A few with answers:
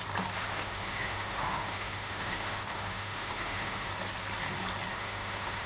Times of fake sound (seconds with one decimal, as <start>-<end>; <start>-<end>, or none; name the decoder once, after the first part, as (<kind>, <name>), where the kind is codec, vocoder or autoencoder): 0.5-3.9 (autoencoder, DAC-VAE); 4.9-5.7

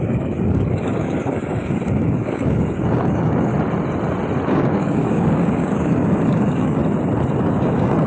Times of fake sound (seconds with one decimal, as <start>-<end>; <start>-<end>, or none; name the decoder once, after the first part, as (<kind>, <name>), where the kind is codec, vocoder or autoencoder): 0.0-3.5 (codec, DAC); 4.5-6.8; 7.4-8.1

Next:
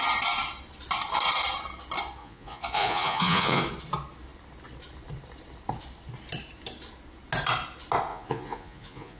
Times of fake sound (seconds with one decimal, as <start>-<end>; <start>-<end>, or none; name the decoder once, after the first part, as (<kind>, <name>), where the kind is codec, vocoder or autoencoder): 2.2-3.6 (vocoder, Vocos); 8.1-9.2

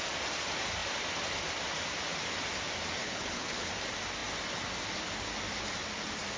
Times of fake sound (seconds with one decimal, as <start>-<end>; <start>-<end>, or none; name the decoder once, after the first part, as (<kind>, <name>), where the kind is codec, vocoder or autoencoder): 3.0-3.7 (codec, HILCodec)

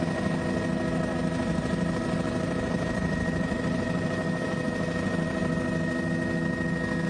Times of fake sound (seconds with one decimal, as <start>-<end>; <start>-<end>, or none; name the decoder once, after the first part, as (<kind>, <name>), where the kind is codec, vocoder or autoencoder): 1.2-5.5 (vocoder, BigVGAN v2)

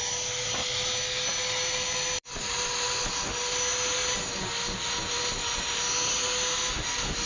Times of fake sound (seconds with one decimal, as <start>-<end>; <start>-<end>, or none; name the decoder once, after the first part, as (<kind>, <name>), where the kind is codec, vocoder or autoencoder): none

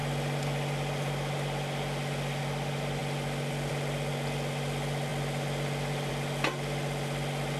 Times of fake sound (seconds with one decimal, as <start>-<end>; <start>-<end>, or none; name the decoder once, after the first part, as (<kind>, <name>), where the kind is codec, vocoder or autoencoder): none